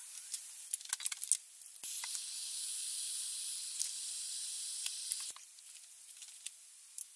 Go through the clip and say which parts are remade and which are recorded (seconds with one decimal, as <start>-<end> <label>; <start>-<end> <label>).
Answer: 0.0-7.2 recorded